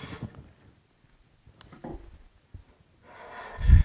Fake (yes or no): no